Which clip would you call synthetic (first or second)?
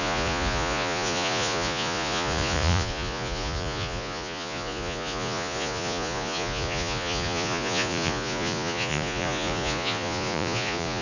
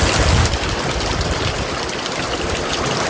first